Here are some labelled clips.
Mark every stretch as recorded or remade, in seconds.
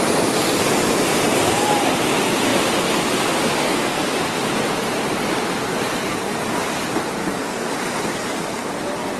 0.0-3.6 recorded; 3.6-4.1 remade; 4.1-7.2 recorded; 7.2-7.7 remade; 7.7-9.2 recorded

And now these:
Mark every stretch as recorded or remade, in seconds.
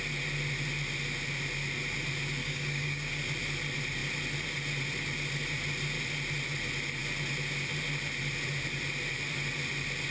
0.0-2.4 recorded; 2.4-3.1 remade; 3.1-10.1 recorded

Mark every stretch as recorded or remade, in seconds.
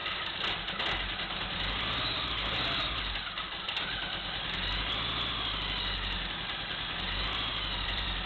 0.0-7.5 recorded; 7.5-8.3 remade